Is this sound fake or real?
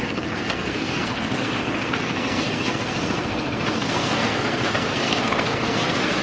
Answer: fake